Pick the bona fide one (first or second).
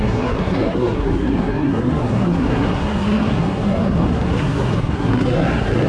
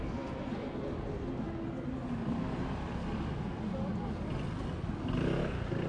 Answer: second